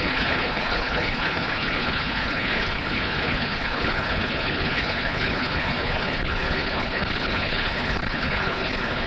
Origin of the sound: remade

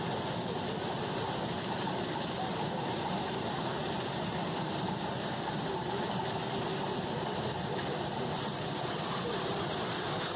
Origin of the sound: recorded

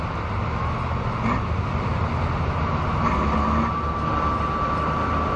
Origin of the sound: recorded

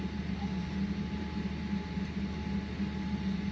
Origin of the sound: recorded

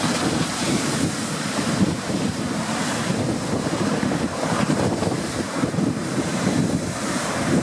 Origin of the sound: remade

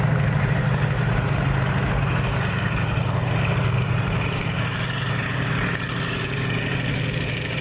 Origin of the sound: remade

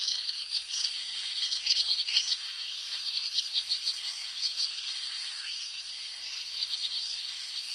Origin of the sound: remade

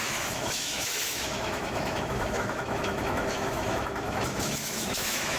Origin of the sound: remade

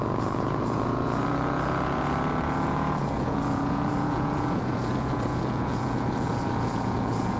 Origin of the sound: remade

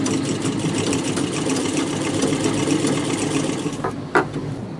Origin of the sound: recorded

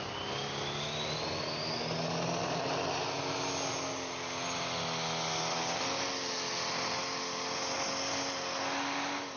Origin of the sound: recorded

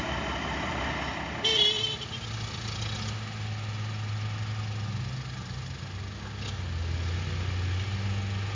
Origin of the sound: recorded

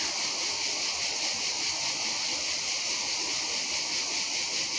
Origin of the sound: recorded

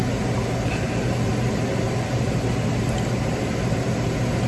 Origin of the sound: recorded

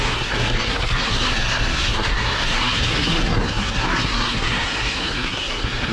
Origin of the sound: remade